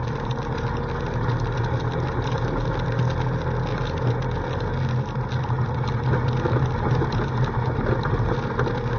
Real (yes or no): yes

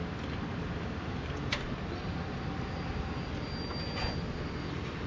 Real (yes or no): yes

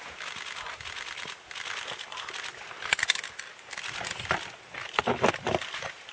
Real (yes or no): yes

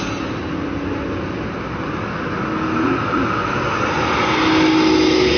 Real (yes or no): yes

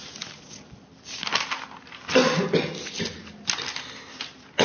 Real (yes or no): yes